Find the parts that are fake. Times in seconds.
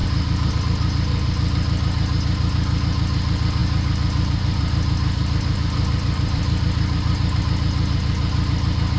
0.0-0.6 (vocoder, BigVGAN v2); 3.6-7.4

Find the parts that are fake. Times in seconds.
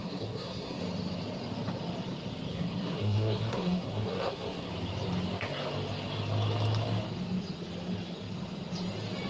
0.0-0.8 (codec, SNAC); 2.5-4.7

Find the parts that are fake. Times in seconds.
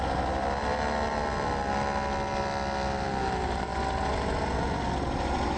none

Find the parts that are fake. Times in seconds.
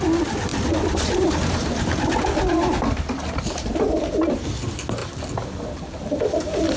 none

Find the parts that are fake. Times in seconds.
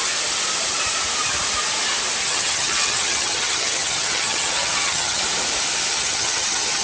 2.2-5.2 (vocoder, HiFi-GAN); 5.9-6.8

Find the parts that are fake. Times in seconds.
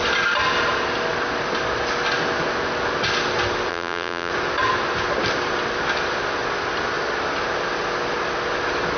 3.7-4.3 (vocoder, BigVGAN v2)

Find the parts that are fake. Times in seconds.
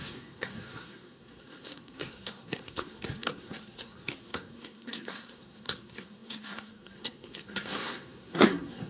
0.0-8.9 (codec, SNAC)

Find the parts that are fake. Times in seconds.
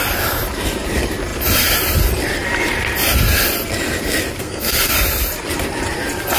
4.4-4.9 (codec, SNAC)